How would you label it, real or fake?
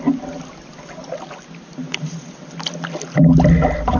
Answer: real